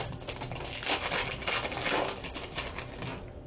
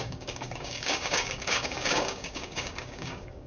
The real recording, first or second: first